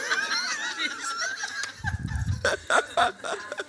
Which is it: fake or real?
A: real